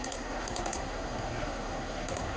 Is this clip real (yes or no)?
no